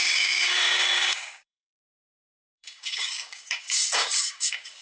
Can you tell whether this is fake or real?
fake